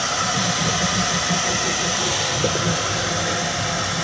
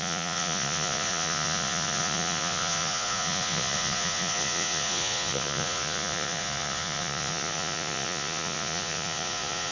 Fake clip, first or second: second